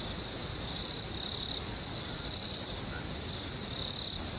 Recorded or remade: recorded